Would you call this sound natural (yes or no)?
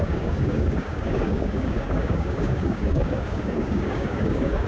no